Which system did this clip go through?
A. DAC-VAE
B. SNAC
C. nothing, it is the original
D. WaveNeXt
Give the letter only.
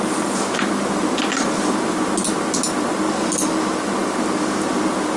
C